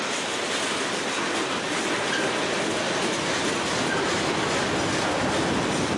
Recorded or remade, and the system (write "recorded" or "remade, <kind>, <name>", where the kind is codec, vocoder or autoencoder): recorded